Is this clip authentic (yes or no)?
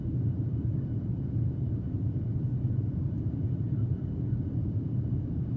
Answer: no